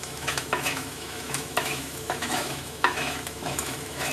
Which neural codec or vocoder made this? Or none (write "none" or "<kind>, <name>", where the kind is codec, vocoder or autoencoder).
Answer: autoencoder, DAC-VAE